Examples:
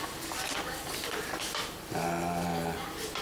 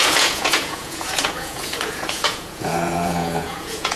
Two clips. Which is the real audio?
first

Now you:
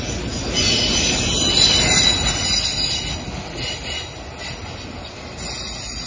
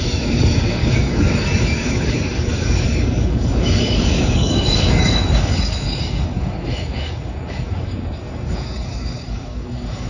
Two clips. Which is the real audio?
first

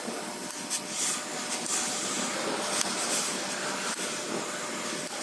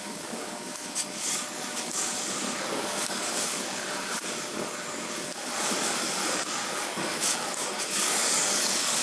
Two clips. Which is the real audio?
first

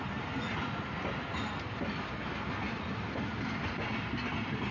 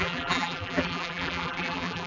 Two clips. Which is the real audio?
first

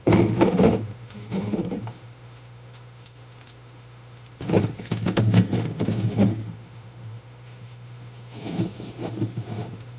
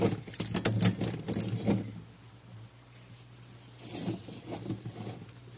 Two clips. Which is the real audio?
second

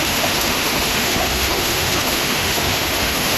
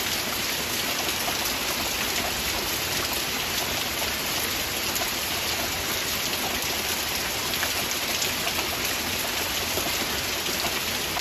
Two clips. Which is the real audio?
second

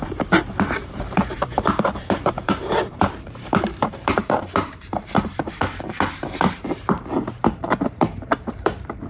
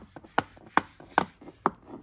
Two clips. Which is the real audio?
second